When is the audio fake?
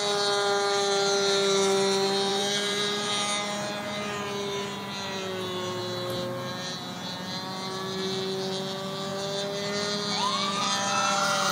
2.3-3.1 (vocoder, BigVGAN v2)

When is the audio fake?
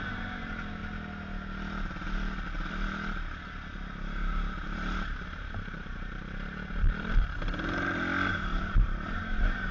0.0-0.8 (vocoder, BigVGAN v2); 4.1-7.4; 8.3-9.7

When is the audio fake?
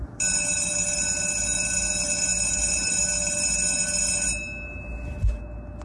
none